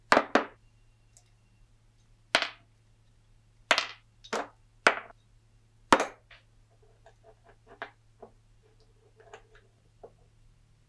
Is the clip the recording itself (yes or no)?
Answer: yes